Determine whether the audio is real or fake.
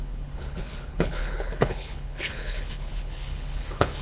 fake